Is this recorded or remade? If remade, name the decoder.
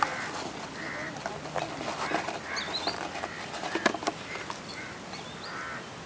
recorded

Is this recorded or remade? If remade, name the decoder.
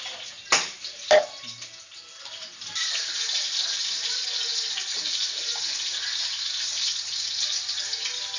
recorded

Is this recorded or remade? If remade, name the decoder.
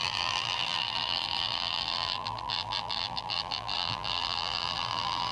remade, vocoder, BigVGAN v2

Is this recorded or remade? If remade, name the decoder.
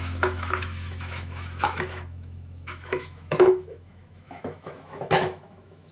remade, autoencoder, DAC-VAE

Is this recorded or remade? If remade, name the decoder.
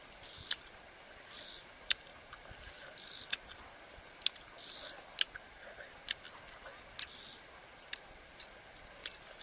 recorded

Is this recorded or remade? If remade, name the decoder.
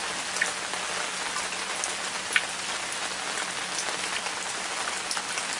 recorded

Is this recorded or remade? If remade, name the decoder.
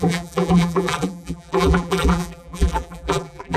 remade, vocoder, BigVGAN v2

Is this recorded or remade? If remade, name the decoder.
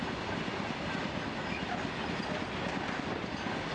recorded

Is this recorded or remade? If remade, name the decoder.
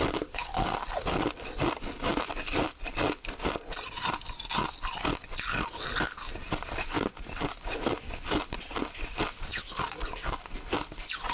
recorded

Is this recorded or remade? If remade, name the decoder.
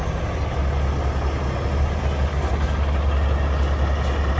recorded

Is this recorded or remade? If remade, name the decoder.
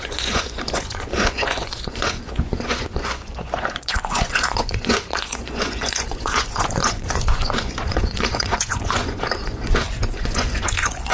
remade, vocoder, Vocos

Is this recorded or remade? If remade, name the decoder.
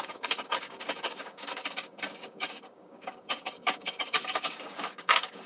remade, codec, DAC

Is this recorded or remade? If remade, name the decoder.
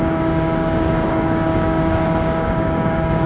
remade, codec, DAC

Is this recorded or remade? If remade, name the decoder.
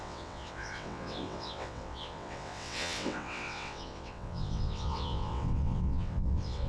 remade, vocoder, WaveNeXt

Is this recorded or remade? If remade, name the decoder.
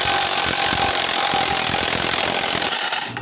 recorded